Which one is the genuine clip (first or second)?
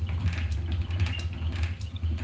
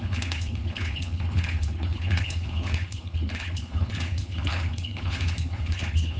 first